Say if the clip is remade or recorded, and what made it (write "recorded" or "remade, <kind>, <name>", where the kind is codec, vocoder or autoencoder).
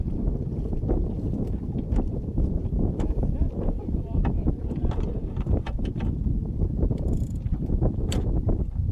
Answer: remade, vocoder, BigVGAN v2